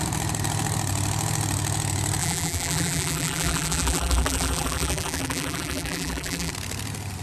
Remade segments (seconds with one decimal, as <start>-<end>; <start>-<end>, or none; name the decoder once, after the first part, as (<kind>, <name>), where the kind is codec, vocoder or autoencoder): 2.2-6.5 (vocoder, BigVGAN v2)